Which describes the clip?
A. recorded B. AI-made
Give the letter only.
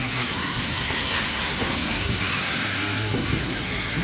B